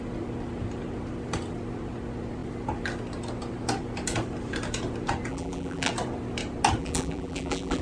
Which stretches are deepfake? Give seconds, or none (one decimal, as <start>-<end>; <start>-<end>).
5.3-5.9; 6.8-7.8